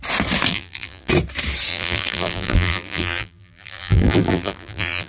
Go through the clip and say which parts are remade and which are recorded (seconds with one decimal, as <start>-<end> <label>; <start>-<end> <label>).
0.0-0.5 recorded; 0.5-1.1 remade; 1.1-1.7 recorded; 1.7-5.1 remade